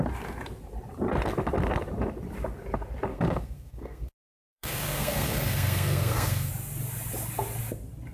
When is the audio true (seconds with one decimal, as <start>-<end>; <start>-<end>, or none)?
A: 0.0-3.1; 6.5-8.1